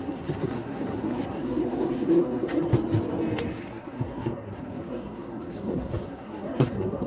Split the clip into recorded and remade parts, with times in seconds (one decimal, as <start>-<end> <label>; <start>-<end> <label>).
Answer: 0.0-2.7 remade; 2.7-3.6 recorded; 3.6-7.1 remade

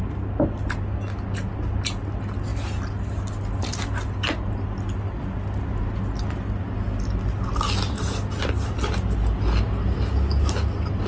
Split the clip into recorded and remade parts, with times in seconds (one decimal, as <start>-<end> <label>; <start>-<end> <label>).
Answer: 0.0-11.1 recorded

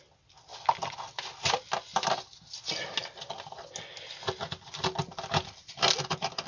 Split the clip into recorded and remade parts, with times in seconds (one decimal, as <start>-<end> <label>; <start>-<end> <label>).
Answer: 0.0-6.5 recorded

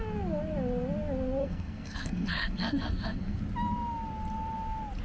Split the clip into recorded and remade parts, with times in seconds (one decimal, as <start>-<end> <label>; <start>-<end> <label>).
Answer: 0.0-1.4 recorded; 1.4-3.4 remade; 3.4-5.0 recorded

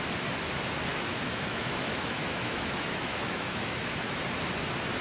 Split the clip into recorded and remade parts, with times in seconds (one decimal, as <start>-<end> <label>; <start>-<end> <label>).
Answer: 0.0-0.9 recorded; 0.9-3.9 remade; 3.9-5.0 recorded

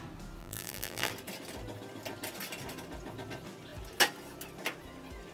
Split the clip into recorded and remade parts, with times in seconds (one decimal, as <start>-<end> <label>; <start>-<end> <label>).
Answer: 0.0-0.4 recorded; 0.4-1.1 remade; 1.1-5.3 recorded

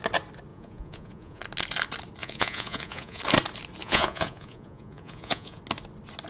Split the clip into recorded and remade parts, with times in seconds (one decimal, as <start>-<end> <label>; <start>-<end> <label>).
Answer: 0.0-0.5 recorded; 0.5-1.4 remade; 1.4-2.2 recorded; 2.2-3.2 remade; 3.2-3.8 recorded; 3.8-5.6 remade; 5.6-6.3 recorded